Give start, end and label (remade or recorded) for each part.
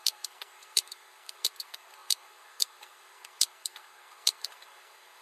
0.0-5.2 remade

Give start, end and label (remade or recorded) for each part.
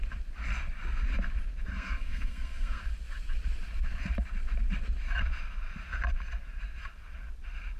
0.0-1.7 recorded; 1.7-2.8 remade; 2.8-7.8 recorded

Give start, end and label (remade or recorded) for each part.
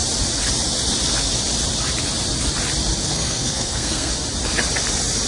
0.0-3.0 recorded; 3.0-4.1 remade; 4.1-5.3 recorded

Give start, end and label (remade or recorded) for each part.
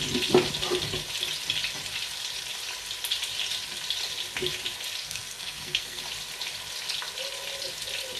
0.0-5.0 recorded; 5.0-6.0 remade; 6.0-8.2 recorded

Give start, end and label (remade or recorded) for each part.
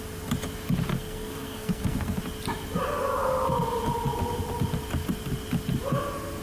0.0-0.9 recorded; 0.9-2.2 remade; 2.2-6.4 recorded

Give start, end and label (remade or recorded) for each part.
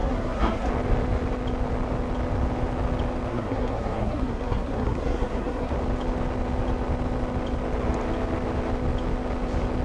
0.0-0.7 remade; 0.7-3.3 recorded; 3.3-5.7 remade; 5.7-9.8 recorded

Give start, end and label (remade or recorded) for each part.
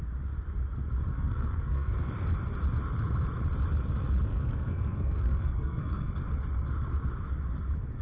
0.0-1.1 recorded; 1.1-1.9 remade; 1.9-4.3 recorded; 4.3-6.1 remade; 6.1-8.0 recorded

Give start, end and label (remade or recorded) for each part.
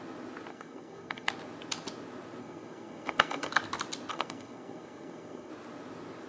0.0-0.5 recorded; 0.5-1.3 remade; 1.3-2.4 recorded; 2.4-3.5 remade; 3.5-4.1 recorded; 4.1-5.5 remade; 5.5-6.3 recorded